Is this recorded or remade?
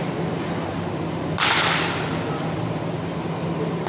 recorded